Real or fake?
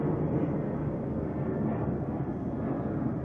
real